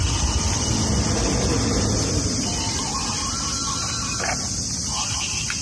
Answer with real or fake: real